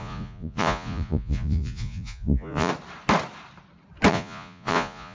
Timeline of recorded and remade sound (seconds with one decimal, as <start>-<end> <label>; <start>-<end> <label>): 0.0-2.7 remade; 2.7-4.1 recorded; 4.1-5.1 remade